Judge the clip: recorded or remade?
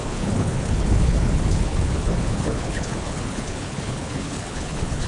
remade